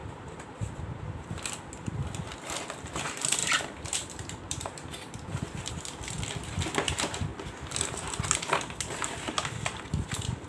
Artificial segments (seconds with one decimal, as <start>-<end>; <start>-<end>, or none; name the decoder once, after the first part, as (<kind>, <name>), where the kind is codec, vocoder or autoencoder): 0.0-1.6 (vocoder, BigVGAN v2); 3.4-5.7